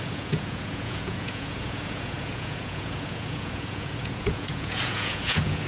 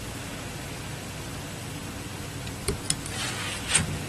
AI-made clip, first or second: first